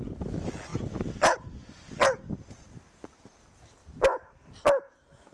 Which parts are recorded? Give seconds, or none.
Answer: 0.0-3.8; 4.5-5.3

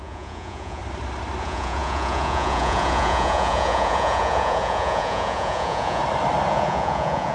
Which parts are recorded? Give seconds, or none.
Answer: 0.8-1.4; 6.0-6.5

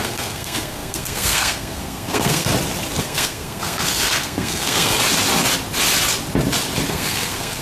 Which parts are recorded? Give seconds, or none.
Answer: 2.5-3.0; 5.0-6.9